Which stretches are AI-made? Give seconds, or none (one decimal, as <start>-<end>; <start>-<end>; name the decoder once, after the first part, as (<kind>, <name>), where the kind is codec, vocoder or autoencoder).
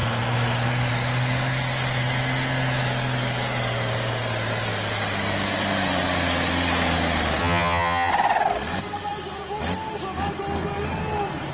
7.4-8.1 (vocoder, HiFi-GAN)